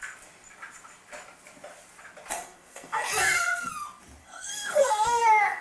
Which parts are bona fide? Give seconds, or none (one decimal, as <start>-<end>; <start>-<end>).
0.0-2.3; 3.7-4.2